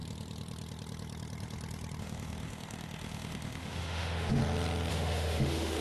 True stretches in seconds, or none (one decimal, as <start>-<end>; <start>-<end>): 0.0-2.0; 4.4-4.9